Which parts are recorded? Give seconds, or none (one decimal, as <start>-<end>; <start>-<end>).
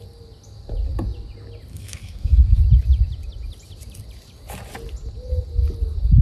0.0-1.7; 2.6-6.2